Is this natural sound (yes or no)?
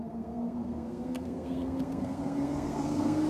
no